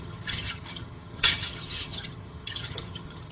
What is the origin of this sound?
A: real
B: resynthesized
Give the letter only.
B